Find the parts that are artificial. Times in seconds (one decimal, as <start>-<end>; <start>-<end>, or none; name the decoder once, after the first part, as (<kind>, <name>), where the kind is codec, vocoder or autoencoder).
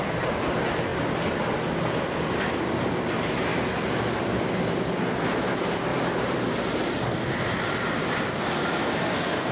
8.8-9.5 (codec, SNAC)